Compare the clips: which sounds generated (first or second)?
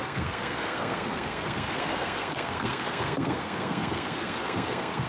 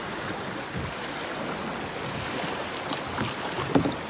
first